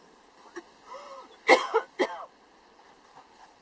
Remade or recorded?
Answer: recorded